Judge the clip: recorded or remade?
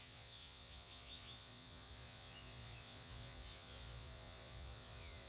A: remade